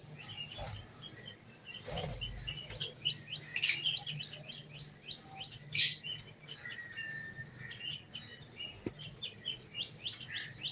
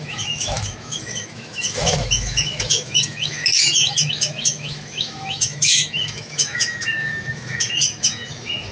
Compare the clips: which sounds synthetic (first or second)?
second